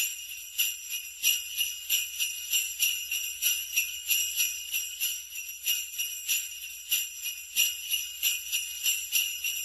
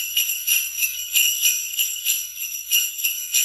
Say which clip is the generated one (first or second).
second